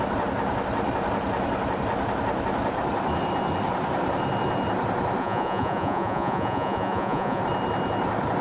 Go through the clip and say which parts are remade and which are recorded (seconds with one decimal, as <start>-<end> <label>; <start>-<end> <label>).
0.0-5.2 recorded; 5.2-7.4 remade; 7.4-8.4 recorded

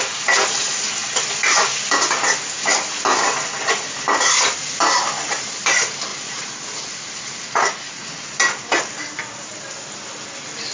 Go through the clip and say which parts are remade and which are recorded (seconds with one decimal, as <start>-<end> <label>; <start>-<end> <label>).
0.0-6.1 recorded; 6.1-8.3 remade; 8.3-10.7 recorded

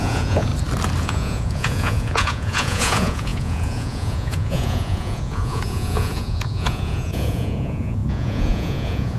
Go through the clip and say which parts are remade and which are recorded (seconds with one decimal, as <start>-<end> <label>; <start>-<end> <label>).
0.0-0.5 remade; 0.5-1.0 recorded; 1.0-9.2 remade

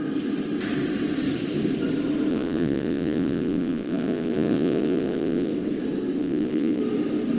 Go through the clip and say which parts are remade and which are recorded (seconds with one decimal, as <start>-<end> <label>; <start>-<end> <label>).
0.0-2.3 recorded; 2.3-5.5 remade; 5.5-6.2 recorded; 6.2-6.8 remade; 6.8-7.4 recorded

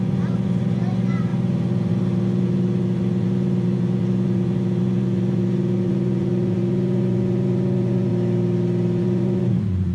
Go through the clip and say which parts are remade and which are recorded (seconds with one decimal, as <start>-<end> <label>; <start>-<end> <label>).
0.0-8.1 remade; 8.1-9.0 recorded; 9.0-9.9 remade

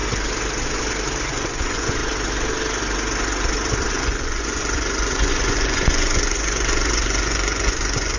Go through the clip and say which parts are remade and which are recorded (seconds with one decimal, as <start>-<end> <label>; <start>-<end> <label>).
0.0-1.2 recorded; 1.2-2.0 remade; 2.0-3.9 recorded; 3.9-8.2 remade

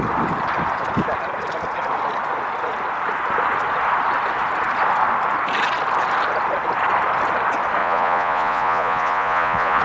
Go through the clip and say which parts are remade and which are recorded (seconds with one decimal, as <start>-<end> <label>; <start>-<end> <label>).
0.0-7.8 recorded; 7.8-9.8 remade

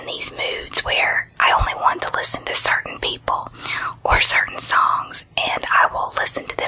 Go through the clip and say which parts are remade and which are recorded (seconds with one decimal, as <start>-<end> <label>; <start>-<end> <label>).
0.0-6.7 recorded